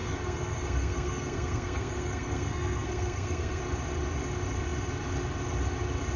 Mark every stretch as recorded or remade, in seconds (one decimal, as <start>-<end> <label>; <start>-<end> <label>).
0.0-3.6 remade; 3.6-6.2 recorded